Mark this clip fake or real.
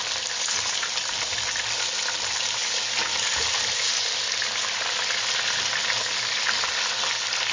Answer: real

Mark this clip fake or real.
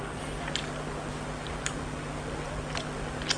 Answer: real